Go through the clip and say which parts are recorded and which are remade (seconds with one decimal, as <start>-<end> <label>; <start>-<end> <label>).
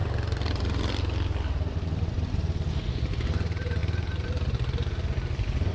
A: 0.0-2.7 remade; 2.7-3.8 recorded; 3.8-5.7 remade